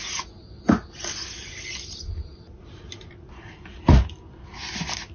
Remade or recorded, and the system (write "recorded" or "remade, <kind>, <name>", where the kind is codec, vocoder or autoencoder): recorded